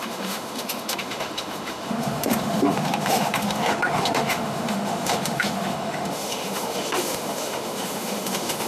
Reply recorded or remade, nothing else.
remade